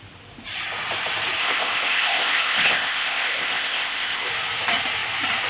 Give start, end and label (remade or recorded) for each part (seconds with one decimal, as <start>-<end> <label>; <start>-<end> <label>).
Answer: 0.0-1.4 recorded; 1.4-4.3 remade; 4.3-5.5 recorded